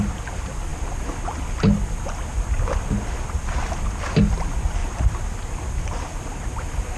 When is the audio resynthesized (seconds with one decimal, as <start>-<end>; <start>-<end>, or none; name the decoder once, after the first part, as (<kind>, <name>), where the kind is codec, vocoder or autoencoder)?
none